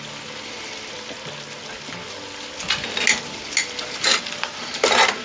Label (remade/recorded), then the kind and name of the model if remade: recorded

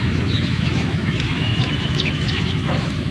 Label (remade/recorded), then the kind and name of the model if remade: remade, autoencoder, DAC-VAE